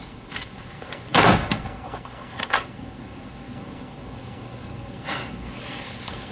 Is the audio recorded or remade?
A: remade